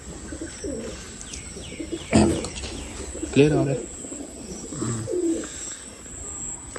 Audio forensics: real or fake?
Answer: real